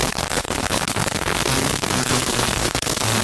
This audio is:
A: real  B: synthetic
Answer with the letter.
B